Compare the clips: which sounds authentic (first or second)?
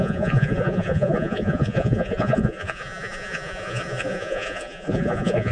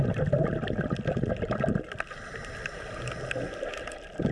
second